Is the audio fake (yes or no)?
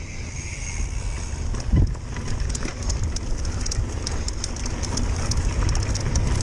no